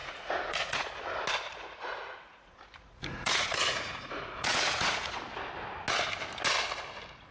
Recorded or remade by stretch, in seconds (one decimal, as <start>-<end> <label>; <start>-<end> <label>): 0.0-1.0 remade; 1.0-1.5 recorded; 1.5-5.2 remade; 5.2-7.3 recorded